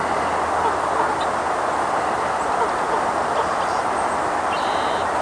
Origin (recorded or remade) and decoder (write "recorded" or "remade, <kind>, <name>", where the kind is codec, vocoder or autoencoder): recorded